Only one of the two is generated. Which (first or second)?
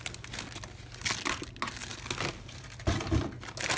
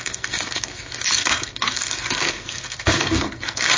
second